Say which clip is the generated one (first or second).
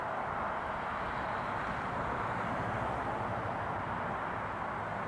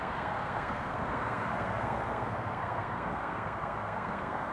second